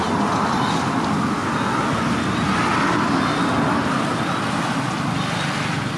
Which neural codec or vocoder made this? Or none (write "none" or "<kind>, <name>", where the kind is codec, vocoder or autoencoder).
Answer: none